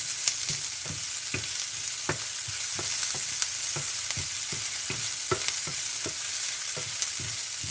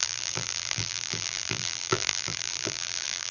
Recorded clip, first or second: first